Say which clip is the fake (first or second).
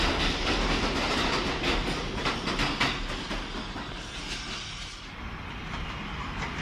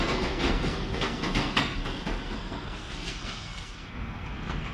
second